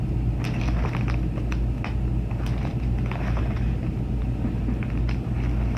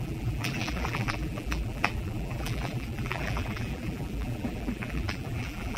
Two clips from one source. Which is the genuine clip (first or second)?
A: first